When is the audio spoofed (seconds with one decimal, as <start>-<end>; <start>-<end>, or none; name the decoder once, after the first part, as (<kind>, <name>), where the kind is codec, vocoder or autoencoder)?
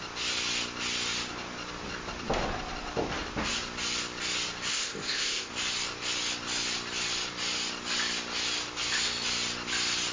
4.7-5.5 (codec, ZipCodec)